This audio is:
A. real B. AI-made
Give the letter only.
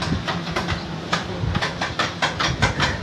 A